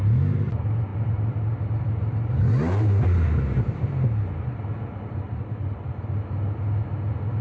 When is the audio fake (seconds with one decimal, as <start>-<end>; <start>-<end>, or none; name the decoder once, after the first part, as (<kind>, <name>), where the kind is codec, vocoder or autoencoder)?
0.9-1.4 (vocoder, BigVGAN v2); 5.3-5.9